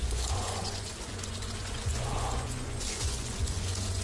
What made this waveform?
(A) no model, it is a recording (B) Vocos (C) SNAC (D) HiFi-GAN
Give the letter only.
B